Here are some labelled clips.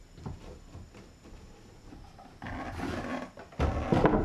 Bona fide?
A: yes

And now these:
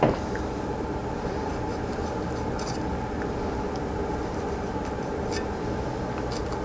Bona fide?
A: no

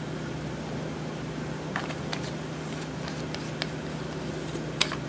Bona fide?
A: yes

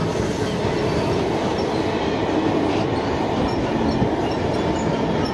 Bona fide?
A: yes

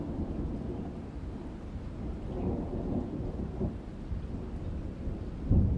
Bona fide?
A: yes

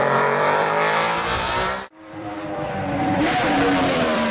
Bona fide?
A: no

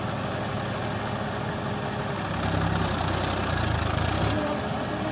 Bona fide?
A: yes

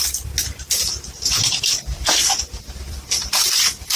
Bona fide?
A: no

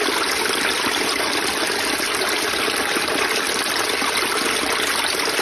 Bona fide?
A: yes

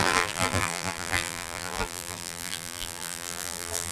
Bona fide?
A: no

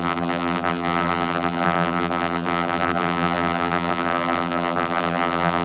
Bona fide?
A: no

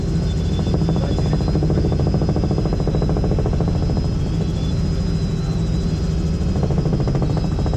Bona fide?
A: yes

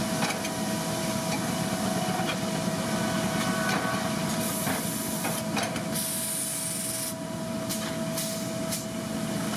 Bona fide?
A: yes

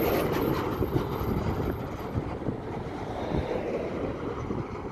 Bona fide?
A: yes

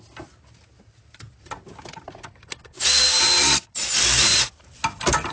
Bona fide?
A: yes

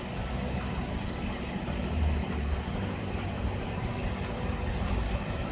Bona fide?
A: no